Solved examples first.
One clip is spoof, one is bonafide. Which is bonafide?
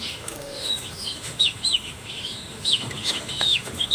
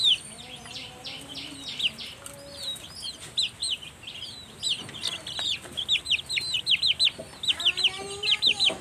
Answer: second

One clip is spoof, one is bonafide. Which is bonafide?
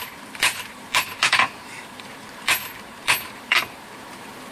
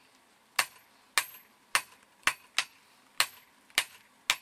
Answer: second